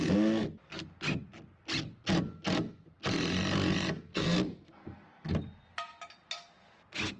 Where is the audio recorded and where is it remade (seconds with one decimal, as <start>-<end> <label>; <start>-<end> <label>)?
0.0-4.1 recorded; 4.1-5.3 remade; 5.3-7.2 recorded